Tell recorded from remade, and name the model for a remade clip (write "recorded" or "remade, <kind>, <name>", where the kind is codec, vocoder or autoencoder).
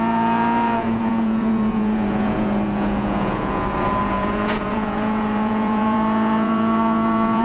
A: remade, vocoder, Vocos